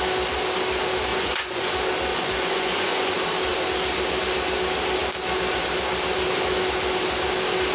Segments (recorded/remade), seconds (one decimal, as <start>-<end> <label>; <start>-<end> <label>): 0.0-1.1 recorded; 1.1-1.7 remade; 1.7-2.1 recorded; 2.1-3.1 remade; 3.1-7.7 recorded